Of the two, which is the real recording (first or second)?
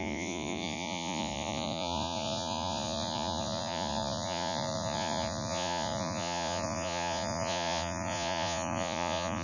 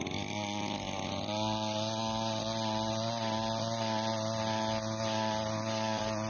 second